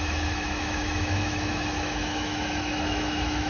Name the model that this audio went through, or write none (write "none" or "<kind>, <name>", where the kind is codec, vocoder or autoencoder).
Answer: autoencoder, DAC-VAE